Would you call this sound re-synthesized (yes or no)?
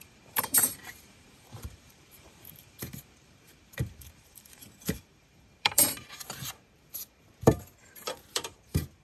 yes